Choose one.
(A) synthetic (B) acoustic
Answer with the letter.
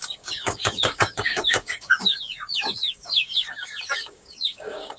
A